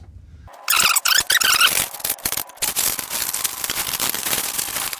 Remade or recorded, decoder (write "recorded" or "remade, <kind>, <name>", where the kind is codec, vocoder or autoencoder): recorded